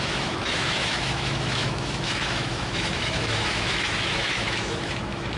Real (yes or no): no